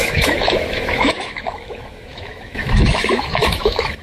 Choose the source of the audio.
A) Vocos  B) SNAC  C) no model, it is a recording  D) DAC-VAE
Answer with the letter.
D